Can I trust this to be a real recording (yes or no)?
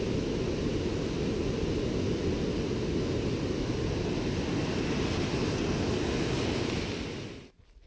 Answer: yes